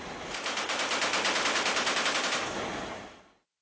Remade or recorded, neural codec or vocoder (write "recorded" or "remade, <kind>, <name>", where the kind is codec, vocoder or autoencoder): remade, vocoder, BigVGAN v2